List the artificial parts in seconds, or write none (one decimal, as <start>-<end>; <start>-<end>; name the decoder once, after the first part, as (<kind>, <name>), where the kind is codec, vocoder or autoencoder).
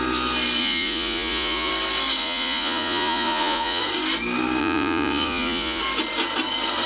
0.6-1.7 (vocoder, Vocos); 2.2-3.8; 4.6-5.8